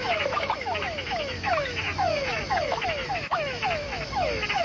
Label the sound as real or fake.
fake